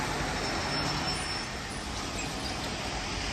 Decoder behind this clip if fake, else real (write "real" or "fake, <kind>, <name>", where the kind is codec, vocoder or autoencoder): real